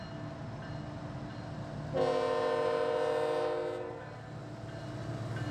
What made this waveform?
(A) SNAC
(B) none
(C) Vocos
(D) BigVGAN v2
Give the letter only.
B